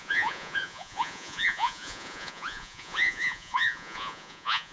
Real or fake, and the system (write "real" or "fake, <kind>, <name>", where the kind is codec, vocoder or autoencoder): fake, vocoder, Vocos